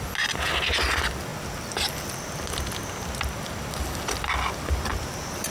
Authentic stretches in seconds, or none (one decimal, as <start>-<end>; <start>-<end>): 0.0-4.9